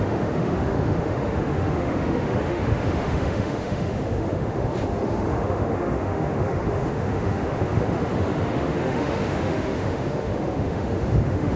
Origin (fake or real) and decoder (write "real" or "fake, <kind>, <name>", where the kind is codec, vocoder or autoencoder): fake, autoencoder, DAC-VAE